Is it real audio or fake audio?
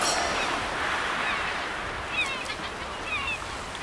real